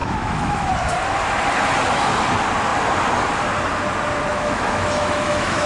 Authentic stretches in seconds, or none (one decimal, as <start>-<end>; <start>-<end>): 0.7-4.3